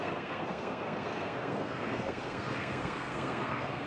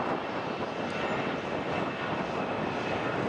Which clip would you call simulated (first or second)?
first